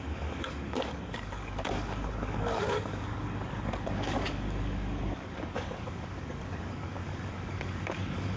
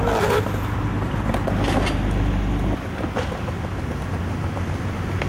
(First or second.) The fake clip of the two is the first